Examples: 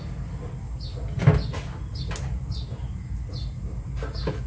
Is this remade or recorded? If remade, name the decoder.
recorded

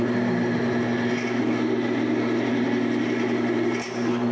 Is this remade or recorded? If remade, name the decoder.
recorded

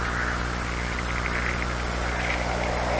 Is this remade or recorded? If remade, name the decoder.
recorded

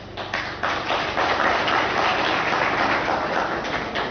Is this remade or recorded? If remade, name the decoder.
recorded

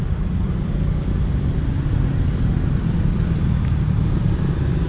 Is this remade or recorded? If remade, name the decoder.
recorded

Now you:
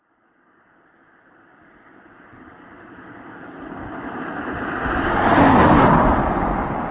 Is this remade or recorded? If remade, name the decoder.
recorded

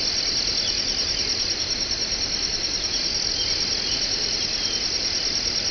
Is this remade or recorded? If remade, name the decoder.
recorded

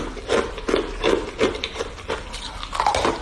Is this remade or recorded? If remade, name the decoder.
recorded